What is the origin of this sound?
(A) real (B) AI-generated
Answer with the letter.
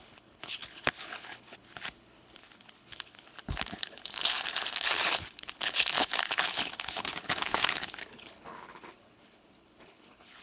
B